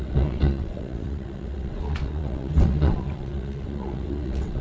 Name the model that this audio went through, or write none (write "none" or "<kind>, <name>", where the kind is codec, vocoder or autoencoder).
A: vocoder, WaveNeXt